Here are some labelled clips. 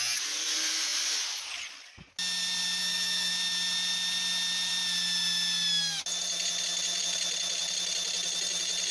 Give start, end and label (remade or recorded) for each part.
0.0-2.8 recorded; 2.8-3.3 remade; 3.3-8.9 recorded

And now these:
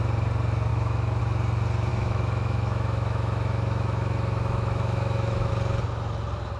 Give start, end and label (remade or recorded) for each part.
0.0-0.7 recorded; 0.7-1.2 remade; 1.2-1.9 recorded; 1.9-5.5 remade; 5.5-6.6 recorded

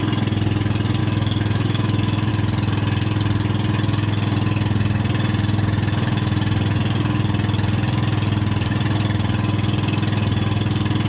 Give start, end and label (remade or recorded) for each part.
0.0-1.0 recorded; 1.0-2.3 remade; 2.3-11.1 recorded

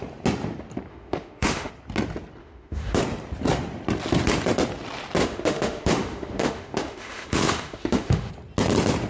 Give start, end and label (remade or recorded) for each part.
0.0-0.9 recorded; 0.9-1.7 remade; 1.7-2.4 recorded; 2.4-3.0 remade; 3.0-5.2 recorded; 5.2-8.3 remade; 8.3-9.1 recorded

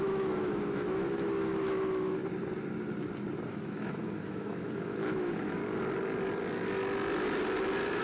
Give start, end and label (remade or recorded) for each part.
0.0-2.2 remade; 2.2-3.5 recorded; 3.5-5.6 remade; 5.6-8.0 recorded

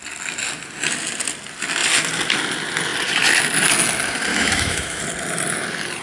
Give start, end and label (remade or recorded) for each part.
0.0-4.3 recorded; 4.3-5.0 remade; 5.0-6.0 recorded

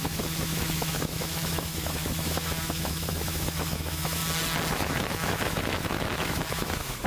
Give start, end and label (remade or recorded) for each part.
0.0-4.2 remade; 4.2-4.7 recorded; 4.7-7.1 remade

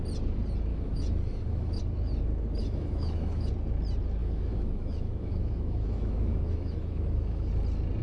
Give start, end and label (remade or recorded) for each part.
0.0-0.7 recorded; 0.7-1.8 remade; 1.8-2.6 recorded; 2.6-3.5 remade; 3.5-4.2 recorded; 4.2-7.5 remade; 7.5-8.0 recorded